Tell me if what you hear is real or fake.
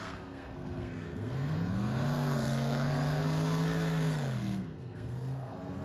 fake